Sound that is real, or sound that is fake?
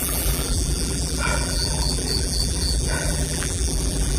fake